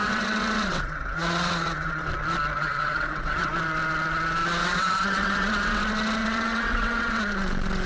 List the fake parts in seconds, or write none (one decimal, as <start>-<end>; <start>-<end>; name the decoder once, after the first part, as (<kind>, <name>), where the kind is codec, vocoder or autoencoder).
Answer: 0.0-2.1 (vocoder, WaveNeXt); 2.6-3.5; 4.6-5.8; 6.2-7.2